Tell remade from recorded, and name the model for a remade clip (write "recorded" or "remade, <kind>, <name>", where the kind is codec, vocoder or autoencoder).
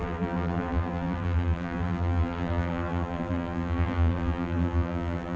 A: remade, vocoder, BigVGAN v2